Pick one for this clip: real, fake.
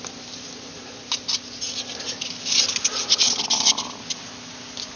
real